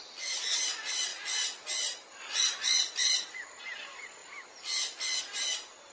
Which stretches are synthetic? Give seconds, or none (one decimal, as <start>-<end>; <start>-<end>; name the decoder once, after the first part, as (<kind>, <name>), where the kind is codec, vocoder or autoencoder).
none